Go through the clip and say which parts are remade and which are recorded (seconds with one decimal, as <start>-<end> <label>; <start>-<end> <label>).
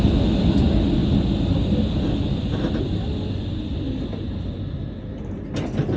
0.0-6.0 recorded